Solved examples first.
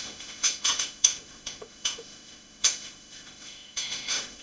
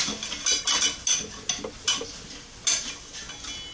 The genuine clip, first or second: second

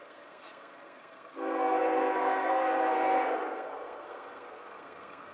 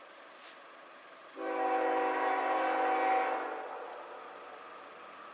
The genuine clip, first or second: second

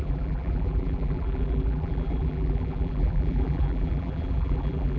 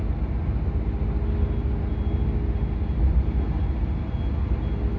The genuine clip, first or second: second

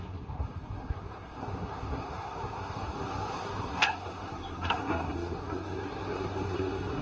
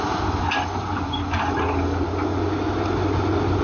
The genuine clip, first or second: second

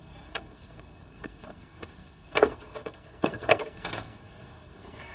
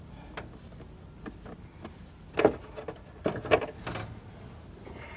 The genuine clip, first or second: second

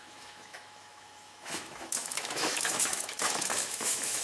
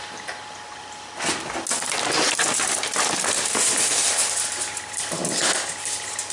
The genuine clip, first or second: second